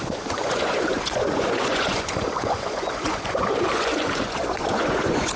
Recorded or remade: remade